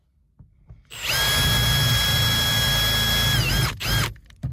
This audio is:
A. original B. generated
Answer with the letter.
A